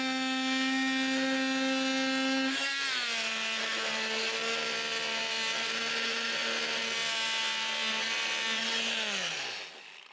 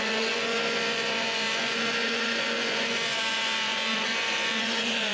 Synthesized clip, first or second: second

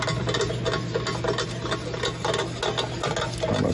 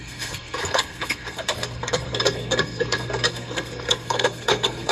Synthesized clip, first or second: second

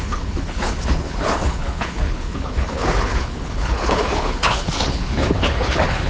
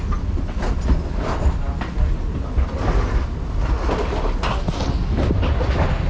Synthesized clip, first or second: first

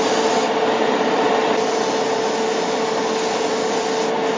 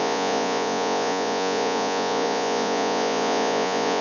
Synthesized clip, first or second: second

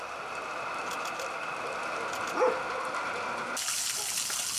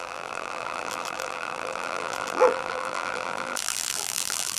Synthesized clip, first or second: second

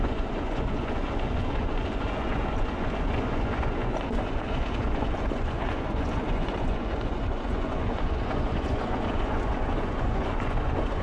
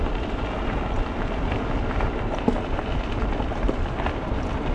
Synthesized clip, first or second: first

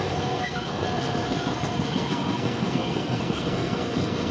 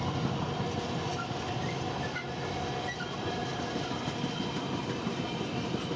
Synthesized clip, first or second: first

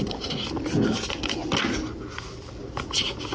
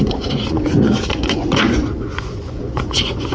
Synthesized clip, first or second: second